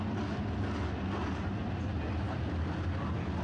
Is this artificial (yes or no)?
no